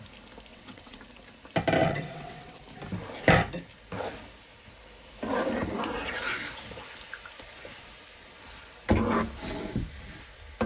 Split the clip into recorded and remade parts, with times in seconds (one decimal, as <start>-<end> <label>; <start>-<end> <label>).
0.0-0.5 recorded; 0.5-1.0 remade; 1.0-1.8 recorded; 1.8-2.6 remade; 2.6-10.7 recorded